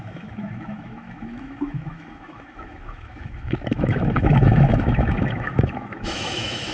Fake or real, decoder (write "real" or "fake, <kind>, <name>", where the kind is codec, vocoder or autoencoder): fake, autoencoder, DAC-VAE